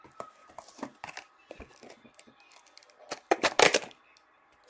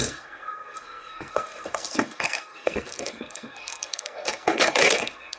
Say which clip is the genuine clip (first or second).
first